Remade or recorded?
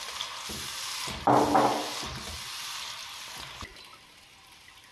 recorded